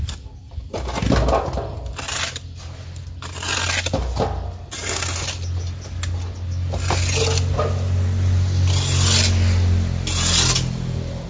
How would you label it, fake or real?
real